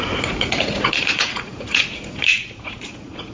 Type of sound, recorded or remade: remade